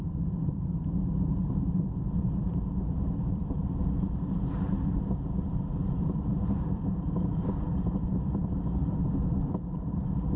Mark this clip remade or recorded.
remade